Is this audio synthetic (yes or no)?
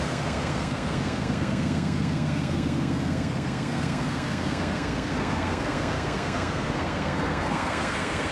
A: yes